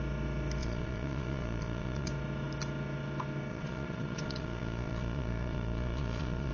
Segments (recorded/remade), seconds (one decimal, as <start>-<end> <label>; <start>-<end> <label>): 0.0-0.6 recorded; 0.6-2.1 remade; 2.1-3.5 recorded; 3.5-6.5 remade